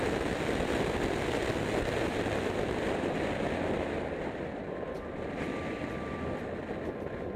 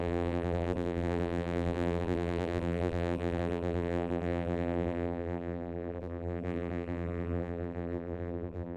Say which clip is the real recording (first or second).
first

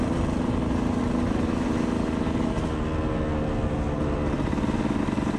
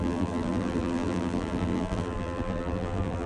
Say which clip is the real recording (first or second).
first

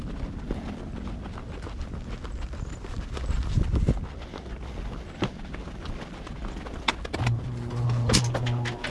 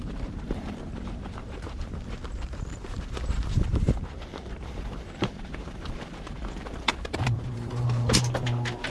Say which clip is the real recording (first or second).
first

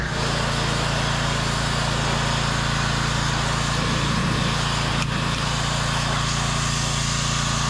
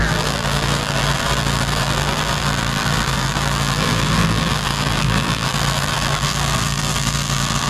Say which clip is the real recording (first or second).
first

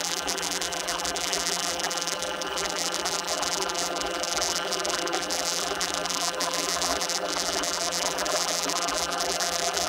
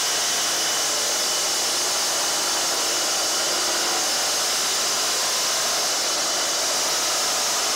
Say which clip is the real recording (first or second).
second